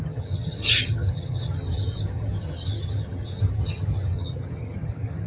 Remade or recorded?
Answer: remade